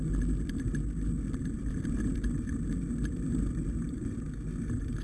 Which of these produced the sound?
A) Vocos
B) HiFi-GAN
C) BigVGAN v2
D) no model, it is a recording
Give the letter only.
D